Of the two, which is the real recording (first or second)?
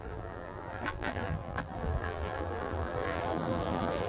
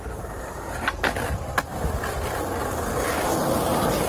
second